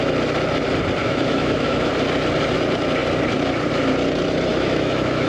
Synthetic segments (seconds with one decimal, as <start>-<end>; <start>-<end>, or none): 1.0-1.9; 4.5-5.3